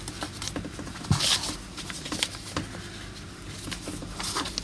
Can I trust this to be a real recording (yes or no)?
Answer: yes